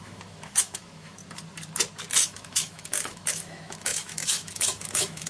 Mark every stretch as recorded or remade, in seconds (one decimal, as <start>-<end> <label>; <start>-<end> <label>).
0.0-1.2 remade; 1.2-2.2 recorded; 2.2-5.3 remade